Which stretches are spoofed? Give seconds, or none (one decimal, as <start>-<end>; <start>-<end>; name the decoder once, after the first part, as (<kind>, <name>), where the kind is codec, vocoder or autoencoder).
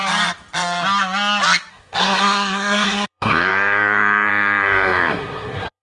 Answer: 1.7-5.8 (codec, SNAC)